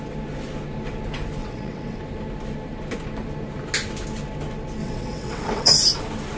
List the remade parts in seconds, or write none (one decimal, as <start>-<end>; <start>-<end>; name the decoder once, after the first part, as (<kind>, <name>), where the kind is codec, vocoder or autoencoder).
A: 1.4-2.0 (vocoder, WaveNeXt); 4.8-5.7